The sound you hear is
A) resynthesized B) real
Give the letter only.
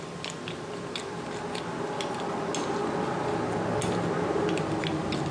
B